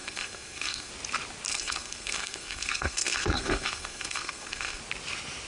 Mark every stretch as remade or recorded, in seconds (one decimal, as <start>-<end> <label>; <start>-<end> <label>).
0.0-0.9 remade; 0.9-1.5 recorded; 1.5-4.8 remade; 4.8-5.5 recorded